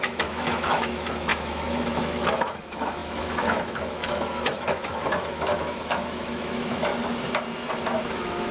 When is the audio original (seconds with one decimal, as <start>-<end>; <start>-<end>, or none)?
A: 6.9-8.0

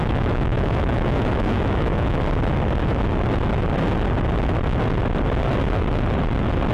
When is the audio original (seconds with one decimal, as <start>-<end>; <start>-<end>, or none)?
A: 2.2-6.7

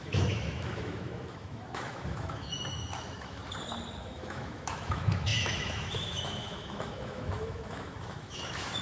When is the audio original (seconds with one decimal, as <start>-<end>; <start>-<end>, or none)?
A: 3.4-4.0

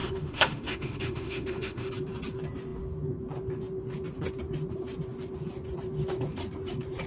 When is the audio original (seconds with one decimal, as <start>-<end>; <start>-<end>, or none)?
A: 1.9-7.1

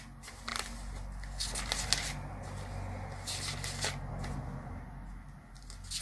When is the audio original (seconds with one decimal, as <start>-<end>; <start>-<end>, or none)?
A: 0.0-6.0

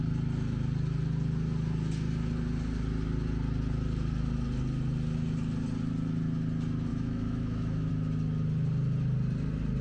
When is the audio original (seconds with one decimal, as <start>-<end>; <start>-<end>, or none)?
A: 0.0-6.9; 7.9-9.8

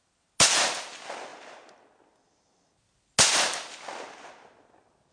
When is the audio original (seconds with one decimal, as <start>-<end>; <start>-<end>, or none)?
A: 0.0-5.1

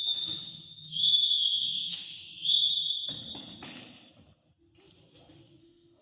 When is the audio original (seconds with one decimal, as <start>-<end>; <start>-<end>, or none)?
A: 2.3-5.6